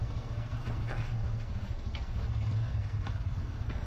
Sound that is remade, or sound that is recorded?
remade